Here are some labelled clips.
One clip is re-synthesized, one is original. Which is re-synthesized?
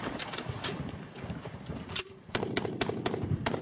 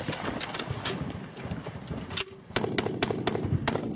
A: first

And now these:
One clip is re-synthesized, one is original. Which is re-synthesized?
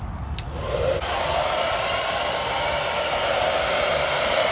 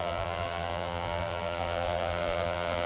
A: second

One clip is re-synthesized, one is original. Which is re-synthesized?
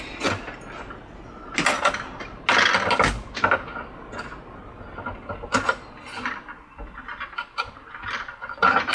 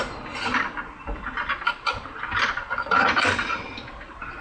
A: second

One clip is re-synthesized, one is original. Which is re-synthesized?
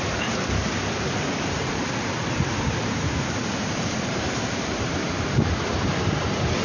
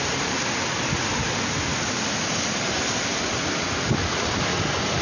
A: first